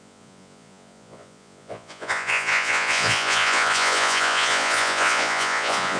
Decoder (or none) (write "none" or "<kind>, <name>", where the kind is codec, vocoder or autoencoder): vocoder, Vocos